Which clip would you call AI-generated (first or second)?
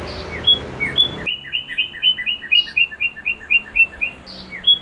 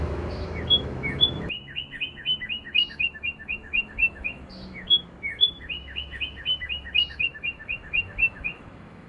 second